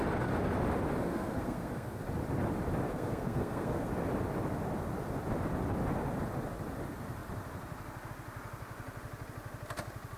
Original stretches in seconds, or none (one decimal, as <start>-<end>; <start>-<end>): 0.0-1.0; 2.0-2.9; 3.9-10.2

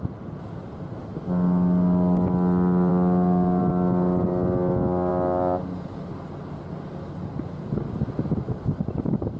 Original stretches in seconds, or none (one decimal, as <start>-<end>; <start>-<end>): 0.0-9.4